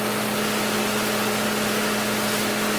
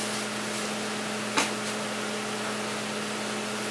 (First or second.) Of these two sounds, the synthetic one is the first